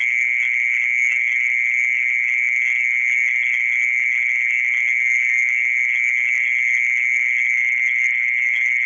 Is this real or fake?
real